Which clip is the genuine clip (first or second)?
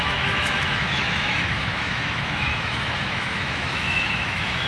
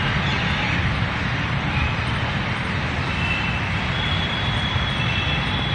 second